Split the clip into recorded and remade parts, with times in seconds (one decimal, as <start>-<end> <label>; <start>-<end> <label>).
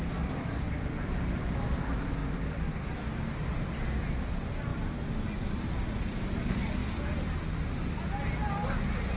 0.0-9.2 recorded